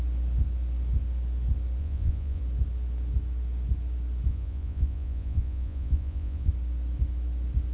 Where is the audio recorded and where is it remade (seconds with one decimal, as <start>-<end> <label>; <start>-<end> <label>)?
0.0-1.8 recorded; 1.8-2.4 remade; 2.4-4.3 recorded; 4.3-6.5 remade; 6.5-7.7 recorded